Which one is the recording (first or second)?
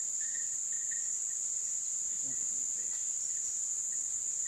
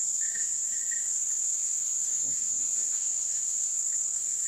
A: first